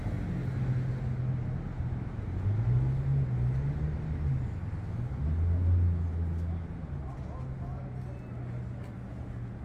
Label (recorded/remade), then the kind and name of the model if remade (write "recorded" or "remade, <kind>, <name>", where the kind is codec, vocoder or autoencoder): recorded